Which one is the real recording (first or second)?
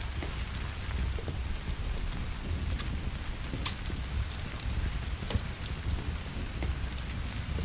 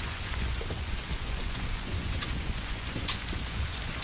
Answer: first